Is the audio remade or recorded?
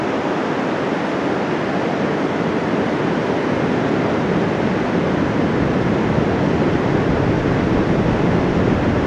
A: recorded